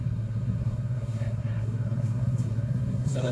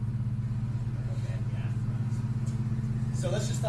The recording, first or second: second